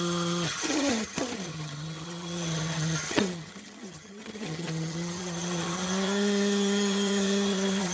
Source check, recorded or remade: remade